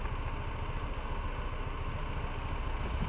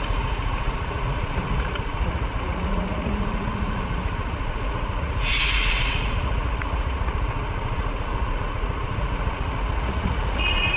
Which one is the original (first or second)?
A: first